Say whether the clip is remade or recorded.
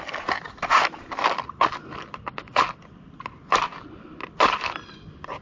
recorded